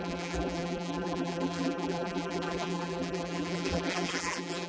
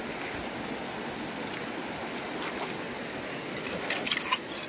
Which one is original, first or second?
second